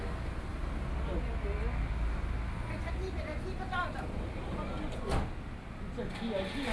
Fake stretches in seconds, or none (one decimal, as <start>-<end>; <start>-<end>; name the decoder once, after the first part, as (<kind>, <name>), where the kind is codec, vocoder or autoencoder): none